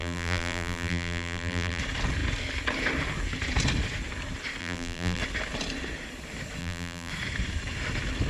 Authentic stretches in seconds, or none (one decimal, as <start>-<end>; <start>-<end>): 1.8-4.6; 5.2-6.6; 7.1-8.3